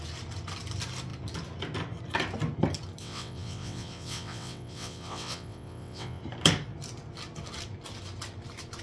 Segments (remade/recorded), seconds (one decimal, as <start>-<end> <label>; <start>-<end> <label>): 0.0-3.0 recorded; 3.0-6.2 remade; 6.2-8.8 recorded